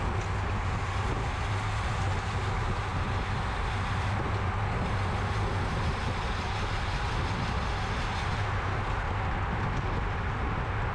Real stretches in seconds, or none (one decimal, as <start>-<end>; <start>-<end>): 0.0-10.9